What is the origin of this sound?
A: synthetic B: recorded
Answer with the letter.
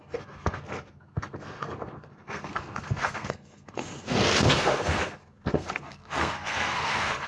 A